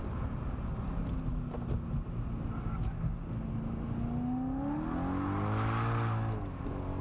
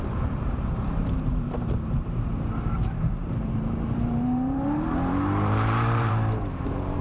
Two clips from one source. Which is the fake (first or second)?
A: second